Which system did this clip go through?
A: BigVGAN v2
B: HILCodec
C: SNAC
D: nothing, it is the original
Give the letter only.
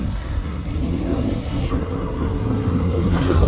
C